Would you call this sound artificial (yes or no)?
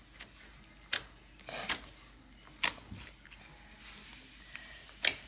no